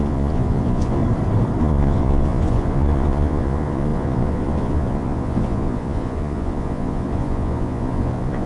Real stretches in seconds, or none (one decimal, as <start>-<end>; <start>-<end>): 1.0-1.6